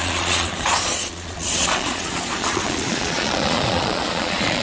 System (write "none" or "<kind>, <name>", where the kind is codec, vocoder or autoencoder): vocoder, Vocos